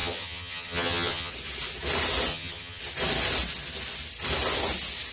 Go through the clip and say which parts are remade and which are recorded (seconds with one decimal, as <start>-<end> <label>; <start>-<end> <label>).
0.0-1.3 remade; 1.3-2.3 recorded; 2.3-2.8 remade; 2.8-5.1 recorded